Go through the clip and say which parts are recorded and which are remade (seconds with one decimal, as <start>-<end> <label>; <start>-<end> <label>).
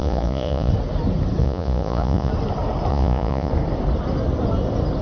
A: 0.0-0.7 remade; 0.7-1.4 recorded; 1.4-2.3 remade; 2.3-2.9 recorded; 2.9-3.5 remade; 3.5-5.0 recorded